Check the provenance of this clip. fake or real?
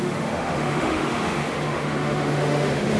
fake